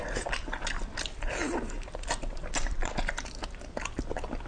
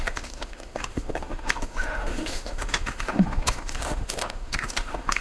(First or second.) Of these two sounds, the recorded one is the first